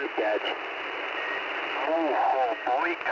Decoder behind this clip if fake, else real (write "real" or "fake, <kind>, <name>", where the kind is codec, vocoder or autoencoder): real